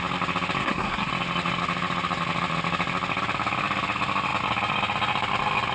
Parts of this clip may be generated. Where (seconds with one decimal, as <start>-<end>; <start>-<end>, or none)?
0.6-1.1